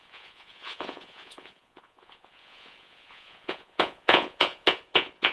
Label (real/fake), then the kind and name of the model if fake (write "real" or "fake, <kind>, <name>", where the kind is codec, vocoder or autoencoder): fake, vocoder, Vocos